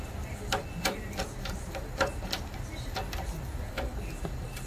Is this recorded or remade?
recorded